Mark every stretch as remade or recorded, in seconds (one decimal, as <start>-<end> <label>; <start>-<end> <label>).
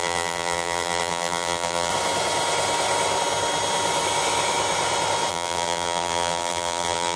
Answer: 0.0-1.9 remade; 1.9-5.3 recorded; 5.3-7.2 remade